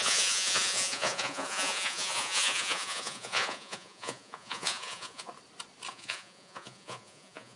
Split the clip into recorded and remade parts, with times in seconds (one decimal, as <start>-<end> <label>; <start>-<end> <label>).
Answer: 0.0-5.3 remade; 5.3-5.9 recorded; 5.9-7.6 remade